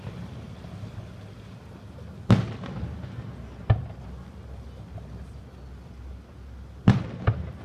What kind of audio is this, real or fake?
real